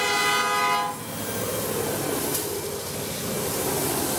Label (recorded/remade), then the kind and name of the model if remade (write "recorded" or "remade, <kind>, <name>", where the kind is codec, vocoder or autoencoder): recorded